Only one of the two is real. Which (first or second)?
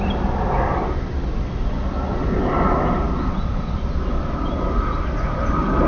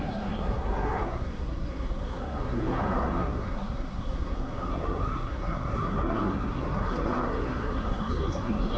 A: first